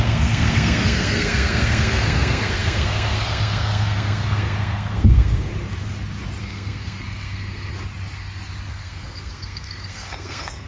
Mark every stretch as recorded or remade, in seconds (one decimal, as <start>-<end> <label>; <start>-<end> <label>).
0.0-5.5 remade; 5.5-6.4 recorded; 6.4-7.7 remade; 7.7-8.7 recorded; 8.7-10.7 remade